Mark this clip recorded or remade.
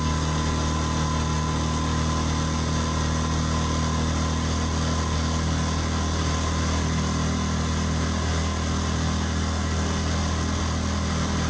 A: recorded